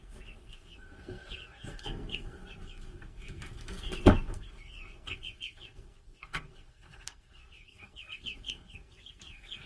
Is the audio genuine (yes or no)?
no